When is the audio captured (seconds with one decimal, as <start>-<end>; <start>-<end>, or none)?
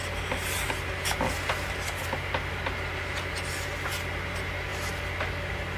0.0-5.8